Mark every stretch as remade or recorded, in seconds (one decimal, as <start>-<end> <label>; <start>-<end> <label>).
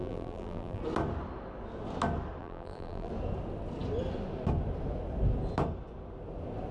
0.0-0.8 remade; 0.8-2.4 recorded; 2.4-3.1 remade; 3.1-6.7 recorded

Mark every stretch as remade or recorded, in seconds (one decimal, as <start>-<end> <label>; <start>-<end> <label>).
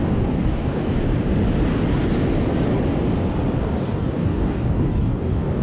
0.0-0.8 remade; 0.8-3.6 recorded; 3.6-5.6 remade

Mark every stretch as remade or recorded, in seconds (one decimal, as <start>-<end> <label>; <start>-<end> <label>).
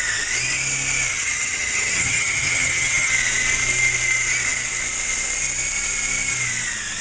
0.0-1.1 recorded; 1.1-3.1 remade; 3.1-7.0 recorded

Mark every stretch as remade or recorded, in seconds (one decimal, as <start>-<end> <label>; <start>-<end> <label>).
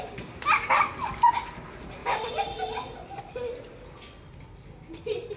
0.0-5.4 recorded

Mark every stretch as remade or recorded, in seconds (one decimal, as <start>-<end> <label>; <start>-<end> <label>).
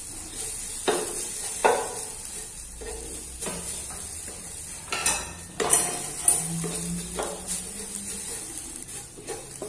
0.0-9.7 recorded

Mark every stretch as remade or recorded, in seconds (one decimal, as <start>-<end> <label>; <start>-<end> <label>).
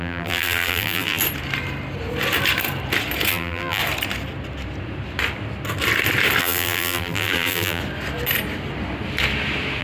0.0-1.2 remade; 1.2-3.3 recorded; 3.3-3.8 remade; 3.8-6.4 recorded; 6.4-7.8 remade; 7.8-9.8 recorded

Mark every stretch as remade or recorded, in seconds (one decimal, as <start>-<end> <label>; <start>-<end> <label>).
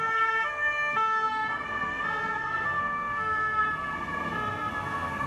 0.0-5.3 remade